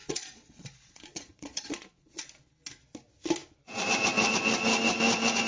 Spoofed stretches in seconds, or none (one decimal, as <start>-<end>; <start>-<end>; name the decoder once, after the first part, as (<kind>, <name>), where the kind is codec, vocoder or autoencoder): 0.0-2.3 (vocoder, Vocos)

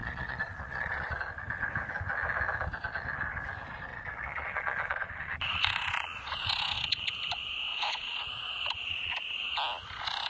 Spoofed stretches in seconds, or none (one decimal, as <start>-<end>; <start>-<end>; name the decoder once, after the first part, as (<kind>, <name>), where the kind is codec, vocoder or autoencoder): 0.0-1.2 (vocoder, Vocos); 3.9-7.1; 7.7-9.1

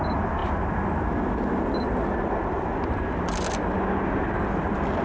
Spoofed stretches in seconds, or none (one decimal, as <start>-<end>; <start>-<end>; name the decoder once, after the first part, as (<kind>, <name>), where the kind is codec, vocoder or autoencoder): none

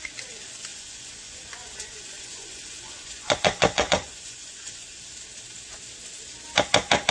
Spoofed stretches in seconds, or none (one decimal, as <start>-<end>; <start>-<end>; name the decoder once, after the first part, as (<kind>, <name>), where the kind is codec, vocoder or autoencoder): 0.7-5.0 (vocoder, Vocos)

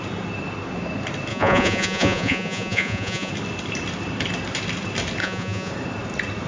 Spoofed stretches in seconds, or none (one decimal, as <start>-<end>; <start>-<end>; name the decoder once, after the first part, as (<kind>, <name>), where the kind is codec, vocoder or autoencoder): 1.3-3.3 (vocoder, Vocos); 5.2-5.7

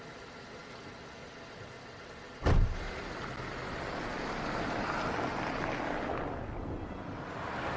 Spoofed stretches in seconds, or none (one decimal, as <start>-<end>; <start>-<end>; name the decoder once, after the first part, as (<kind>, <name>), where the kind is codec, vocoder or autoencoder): none

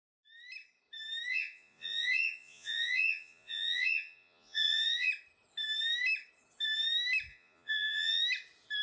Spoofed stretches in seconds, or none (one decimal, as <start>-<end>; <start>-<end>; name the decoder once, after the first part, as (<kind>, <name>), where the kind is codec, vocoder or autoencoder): 1.3-5.1 (vocoder, Vocos); 7.3-8.2

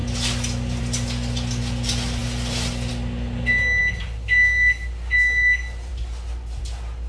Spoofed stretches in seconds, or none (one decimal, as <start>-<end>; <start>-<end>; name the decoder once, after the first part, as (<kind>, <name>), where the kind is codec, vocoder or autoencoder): none